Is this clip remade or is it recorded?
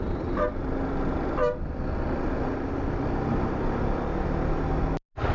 recorded